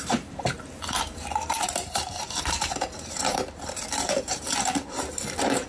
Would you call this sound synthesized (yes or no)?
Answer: yes